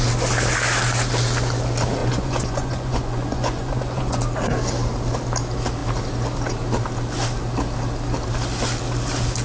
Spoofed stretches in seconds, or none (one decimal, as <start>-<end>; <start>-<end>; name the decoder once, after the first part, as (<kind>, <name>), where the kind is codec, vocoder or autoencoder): 2.0-4.2 (vocoder, Vocos)